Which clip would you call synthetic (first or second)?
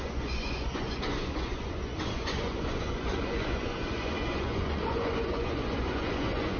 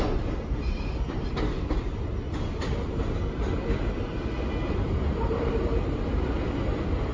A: first